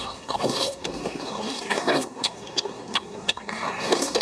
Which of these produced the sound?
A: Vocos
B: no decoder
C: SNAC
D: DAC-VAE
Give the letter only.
C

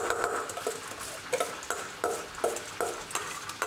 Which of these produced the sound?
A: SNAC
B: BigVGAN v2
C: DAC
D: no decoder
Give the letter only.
D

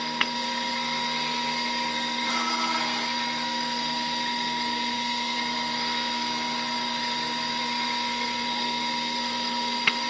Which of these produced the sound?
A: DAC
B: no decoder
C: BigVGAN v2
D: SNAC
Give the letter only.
D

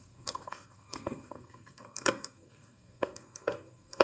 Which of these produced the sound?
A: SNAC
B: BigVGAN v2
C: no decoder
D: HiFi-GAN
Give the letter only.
A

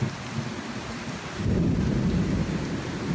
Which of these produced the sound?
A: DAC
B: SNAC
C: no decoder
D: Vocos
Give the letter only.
C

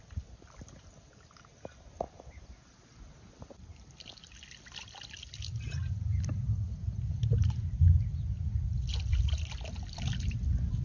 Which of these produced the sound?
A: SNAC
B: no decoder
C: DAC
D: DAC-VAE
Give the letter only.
B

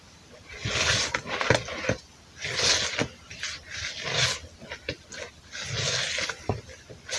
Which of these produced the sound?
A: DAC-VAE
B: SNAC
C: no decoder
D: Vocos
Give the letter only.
C